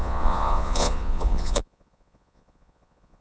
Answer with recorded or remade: remade